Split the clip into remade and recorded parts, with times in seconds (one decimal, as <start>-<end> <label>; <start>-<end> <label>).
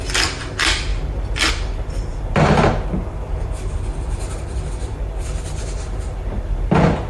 0.0-7.1 recorded